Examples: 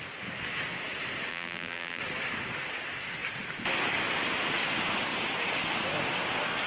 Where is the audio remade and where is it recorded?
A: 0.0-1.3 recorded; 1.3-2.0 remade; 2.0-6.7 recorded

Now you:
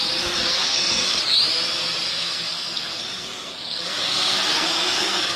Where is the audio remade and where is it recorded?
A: 0.0-0.5 recorded; 0.5-1.2 remade; 1.2-2.1 recorded; 2.1-5.4 remade